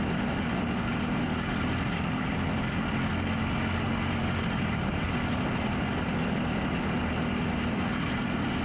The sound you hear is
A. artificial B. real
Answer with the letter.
B